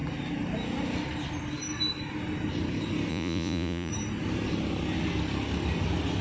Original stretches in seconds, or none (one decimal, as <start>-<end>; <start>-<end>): 0.0-3.1; 3.9-6.2